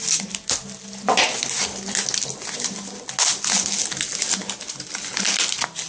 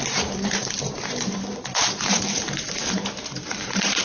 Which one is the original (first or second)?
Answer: first